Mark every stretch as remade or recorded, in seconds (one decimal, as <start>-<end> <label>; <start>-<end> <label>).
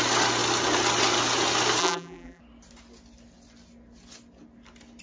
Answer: 0.0-1.8 recorded; 1.8-2.4 remade; 2.4-5.0 recorded